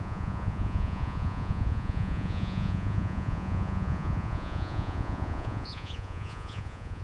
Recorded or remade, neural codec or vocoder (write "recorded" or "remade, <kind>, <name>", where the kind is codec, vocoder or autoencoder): remade, vocoder, Vocos